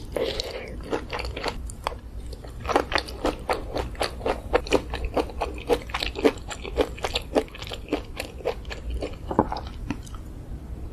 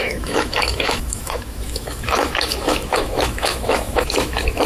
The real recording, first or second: first